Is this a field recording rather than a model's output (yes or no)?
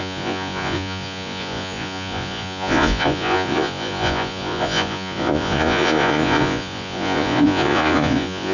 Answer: no